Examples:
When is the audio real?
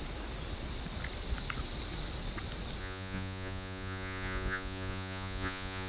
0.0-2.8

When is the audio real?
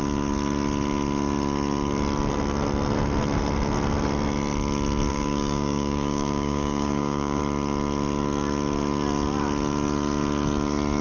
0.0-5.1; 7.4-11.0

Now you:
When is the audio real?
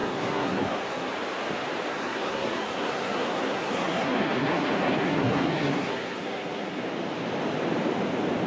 1.1-1.9; 6.8-8.5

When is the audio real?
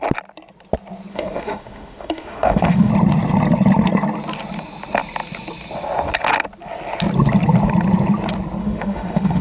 0.0-1.1; 2.9-8.6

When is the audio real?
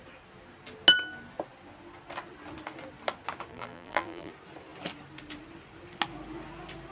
0.0-3.5; 4.3-6.9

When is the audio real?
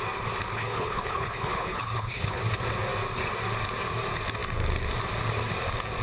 0.0-0.5; 2.4-6.0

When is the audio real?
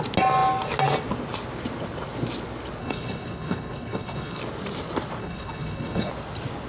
0.0-2.8; 4.4-5.2; 6.1-6.7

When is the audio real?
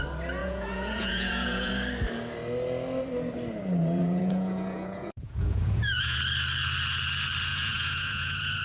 0.0-0.4; 1.7-3.8; 6.2-7.5